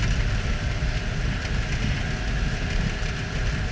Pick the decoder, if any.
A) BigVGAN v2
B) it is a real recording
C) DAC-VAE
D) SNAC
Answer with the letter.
B